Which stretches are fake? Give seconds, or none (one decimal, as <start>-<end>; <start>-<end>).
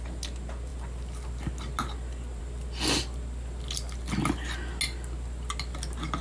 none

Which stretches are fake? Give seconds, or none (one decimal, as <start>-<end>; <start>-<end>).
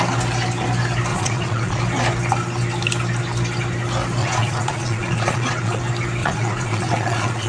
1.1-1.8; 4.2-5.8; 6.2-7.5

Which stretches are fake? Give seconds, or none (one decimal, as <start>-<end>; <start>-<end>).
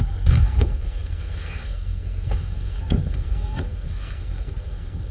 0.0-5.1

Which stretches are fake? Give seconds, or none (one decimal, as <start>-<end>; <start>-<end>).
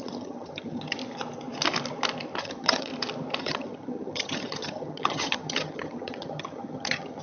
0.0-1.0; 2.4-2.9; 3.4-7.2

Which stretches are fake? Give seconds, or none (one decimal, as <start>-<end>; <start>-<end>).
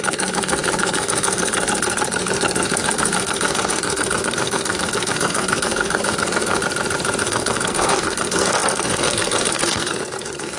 0.0-6.6; 7.2-10.6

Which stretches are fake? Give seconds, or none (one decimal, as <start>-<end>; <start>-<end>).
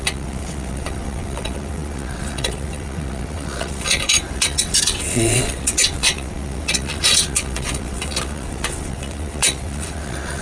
0.0-10.4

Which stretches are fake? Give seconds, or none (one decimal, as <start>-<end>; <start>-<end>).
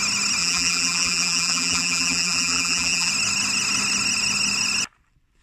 0.4-3.1